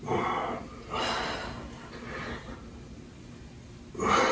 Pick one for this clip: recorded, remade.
recorded